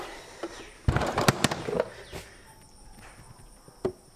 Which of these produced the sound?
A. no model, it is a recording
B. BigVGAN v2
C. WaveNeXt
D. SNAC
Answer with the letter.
A